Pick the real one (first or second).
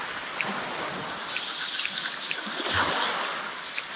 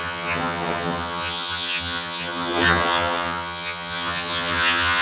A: first